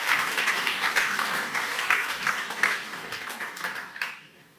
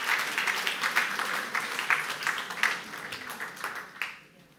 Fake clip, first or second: first